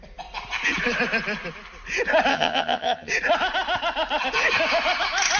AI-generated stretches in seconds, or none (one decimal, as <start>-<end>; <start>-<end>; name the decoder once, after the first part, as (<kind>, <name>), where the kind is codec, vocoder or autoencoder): 2.3-3.1 (vocoder, HiFi-GAN)